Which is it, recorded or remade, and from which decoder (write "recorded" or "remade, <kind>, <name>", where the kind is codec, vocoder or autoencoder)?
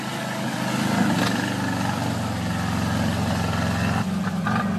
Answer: recorded